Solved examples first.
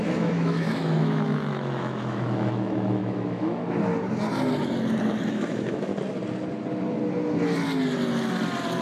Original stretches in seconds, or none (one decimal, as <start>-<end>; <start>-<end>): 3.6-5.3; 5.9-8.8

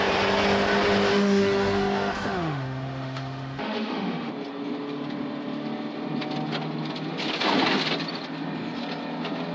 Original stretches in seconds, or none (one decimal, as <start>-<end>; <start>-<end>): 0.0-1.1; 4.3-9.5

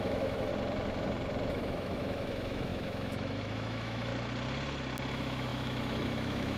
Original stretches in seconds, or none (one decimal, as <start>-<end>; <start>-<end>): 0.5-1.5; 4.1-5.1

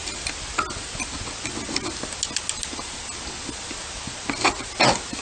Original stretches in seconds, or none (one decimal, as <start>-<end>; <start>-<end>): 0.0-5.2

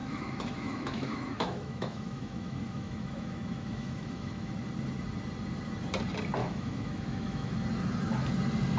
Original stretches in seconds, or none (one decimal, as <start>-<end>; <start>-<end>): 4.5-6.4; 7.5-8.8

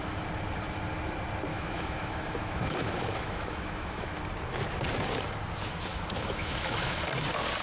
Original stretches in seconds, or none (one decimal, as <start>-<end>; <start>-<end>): 0.0-1.5; 4.2-5.9; 7.0-7.6